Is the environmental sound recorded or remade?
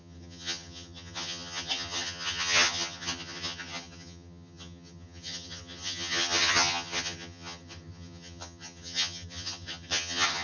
remade